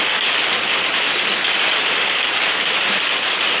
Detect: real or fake real